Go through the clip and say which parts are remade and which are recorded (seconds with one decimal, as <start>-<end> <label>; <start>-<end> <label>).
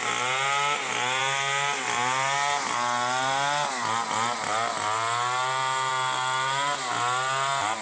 0.0-7.8 recorded